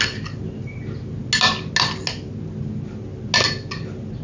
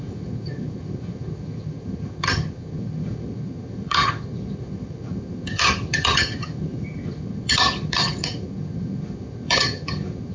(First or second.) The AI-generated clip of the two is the second